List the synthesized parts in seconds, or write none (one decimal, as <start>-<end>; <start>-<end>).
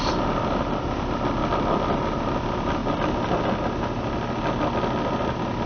none